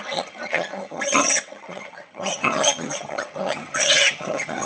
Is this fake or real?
fake